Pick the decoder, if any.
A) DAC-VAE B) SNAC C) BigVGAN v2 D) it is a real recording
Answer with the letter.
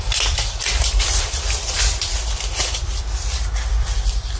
C